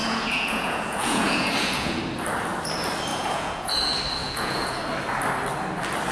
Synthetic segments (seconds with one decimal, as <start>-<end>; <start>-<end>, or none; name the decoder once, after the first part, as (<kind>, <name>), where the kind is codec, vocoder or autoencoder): 0.0-2.0 (vocoder, Vocos); 3.1-3.7; 4.2-4.8